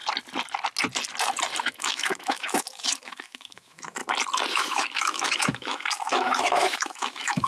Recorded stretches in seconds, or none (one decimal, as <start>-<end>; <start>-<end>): 0.0-1.6; 4.0-4.5